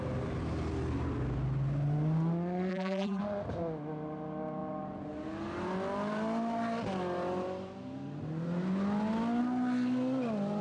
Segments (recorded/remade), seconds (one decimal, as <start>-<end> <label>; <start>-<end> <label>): 0.0-2.7 recorded; 2.7-3.2 remade; 3.2-10.6 recorded